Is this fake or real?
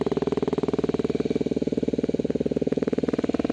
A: real